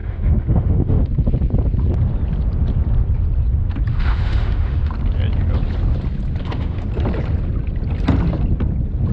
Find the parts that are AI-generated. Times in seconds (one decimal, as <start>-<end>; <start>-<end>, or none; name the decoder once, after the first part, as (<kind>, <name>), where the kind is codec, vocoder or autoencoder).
0.0-1.1 (autoencoder, DAC-VAE); 3.9-4.9; 6.4-6.9